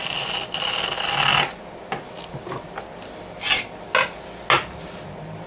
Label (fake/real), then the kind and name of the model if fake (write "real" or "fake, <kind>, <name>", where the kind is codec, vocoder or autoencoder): real